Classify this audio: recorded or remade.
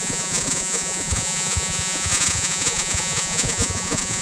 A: remade